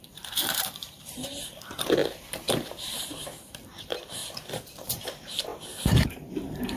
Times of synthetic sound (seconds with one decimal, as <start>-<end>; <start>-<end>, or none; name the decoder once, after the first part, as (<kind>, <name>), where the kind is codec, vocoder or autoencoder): 0.0-4.2 (vocoder, BigVGAN v2); 4.8-6.8